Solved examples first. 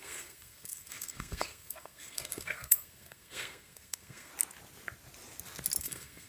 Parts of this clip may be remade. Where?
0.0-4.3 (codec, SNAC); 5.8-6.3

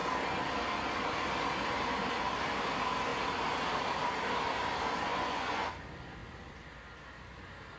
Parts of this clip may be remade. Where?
5.1-5.7 (vocoder, Vocos)

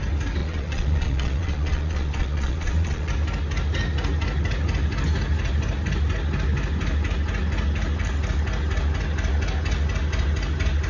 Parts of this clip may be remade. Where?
0.4-3.1 (vocoder, Vocos)

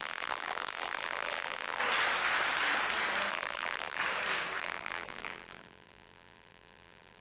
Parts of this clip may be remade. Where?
0.0-1.8 (vocoder, BigVGAN v2); 3.3-4.0; 4.6-7.2

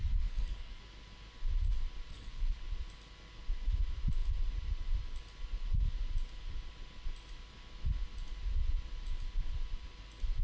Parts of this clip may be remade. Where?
0.0-0.8 (codec, SNAC); 2.1-2.6

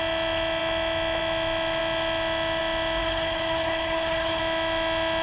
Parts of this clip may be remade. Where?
3.0-4.4 (codec, HILCodec)

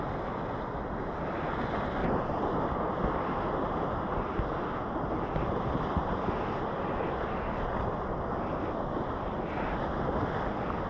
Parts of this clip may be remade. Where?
2.0-2.7 (vocoder, BigVGAN v2)